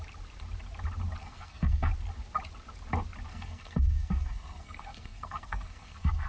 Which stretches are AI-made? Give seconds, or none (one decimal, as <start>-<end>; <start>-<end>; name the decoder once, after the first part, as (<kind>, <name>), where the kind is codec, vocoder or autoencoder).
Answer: 1.2-1.9 (codec, SNAC); 3.3-6.3